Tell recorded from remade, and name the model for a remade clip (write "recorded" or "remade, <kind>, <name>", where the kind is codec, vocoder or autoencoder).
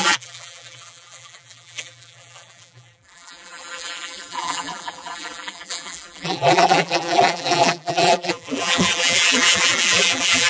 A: remade, vocoder, BigVGAN v2